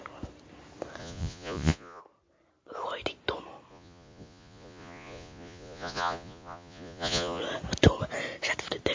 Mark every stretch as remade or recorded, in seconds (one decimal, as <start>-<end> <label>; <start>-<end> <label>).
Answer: 0.0-1.0 recorded; 1.0-2.0 remade; 2.0-3.7 recorded; 3.7-7.4 remade; 7.4-8.9 recorded